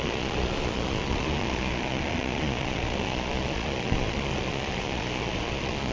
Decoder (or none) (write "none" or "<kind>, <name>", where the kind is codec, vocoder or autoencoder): vocoder, Vocos